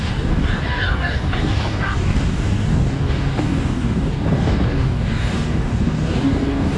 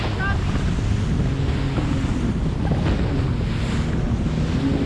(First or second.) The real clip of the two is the second